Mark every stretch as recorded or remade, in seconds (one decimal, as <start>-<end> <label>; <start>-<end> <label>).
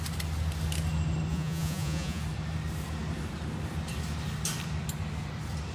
0.0-1.3 recorded; 1.3-2.2 remade; 2.2-5.7 recorded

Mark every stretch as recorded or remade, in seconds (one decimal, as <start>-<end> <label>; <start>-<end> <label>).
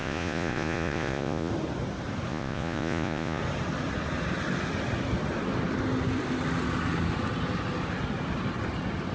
0.0-1.5 remade; 1.5-2.3 recorded; 2.3-3.4 remade; 3.4-9.1 recorded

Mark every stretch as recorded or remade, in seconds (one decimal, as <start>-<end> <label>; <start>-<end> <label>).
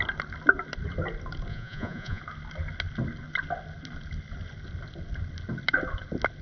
0.0-1.5 recorded; 1.5-2.2 remade; 2.2-6.4 recorded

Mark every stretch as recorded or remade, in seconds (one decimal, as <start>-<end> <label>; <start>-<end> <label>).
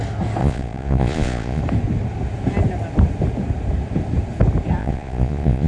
0.0-0.4 recorded; 0.4-1.6 remade; 1.6-4.8 recorded; 4.8-5.7 remade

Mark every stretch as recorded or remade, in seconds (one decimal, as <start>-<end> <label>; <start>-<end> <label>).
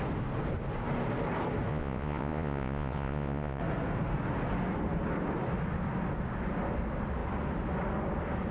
0.0-1.7 recorded; 1.7-3.6 remade; 3.6-8.5 recorded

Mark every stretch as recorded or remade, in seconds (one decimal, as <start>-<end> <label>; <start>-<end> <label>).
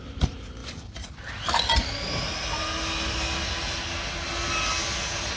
0.0-5.4 recorded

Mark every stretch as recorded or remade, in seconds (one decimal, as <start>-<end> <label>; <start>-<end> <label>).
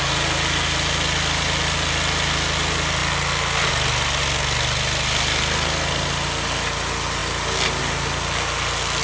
0.0-9.0 recorded